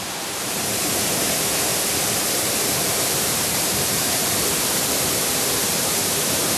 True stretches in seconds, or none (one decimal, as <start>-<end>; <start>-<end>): 1.7-2.3